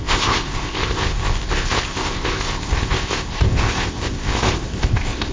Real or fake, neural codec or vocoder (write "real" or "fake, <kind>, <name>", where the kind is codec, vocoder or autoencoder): fake, codec, ZipCodec